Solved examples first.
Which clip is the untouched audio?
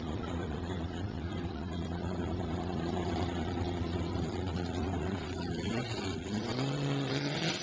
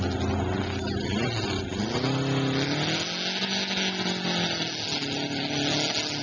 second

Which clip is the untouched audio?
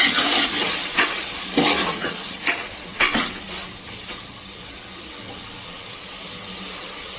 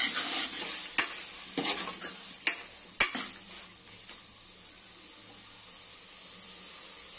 second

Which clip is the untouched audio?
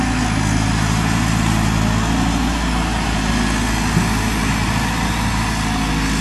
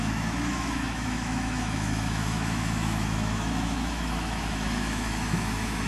first